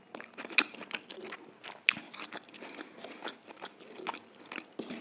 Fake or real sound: real